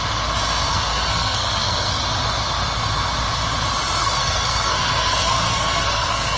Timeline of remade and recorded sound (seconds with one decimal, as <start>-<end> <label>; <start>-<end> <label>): 0.0-0.7 recorded; 0.7-2.0 remade; 2.0-4.0 recorded; 4.0-6.4 remade